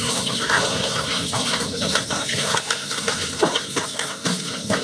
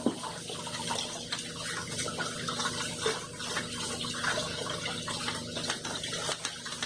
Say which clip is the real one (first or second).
second